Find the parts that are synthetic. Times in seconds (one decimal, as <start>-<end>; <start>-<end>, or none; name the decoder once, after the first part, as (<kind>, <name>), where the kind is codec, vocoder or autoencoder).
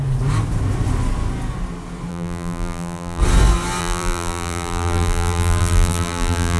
2.1-3.2 (vocoder, BigVGAN v2); 3.8-6.6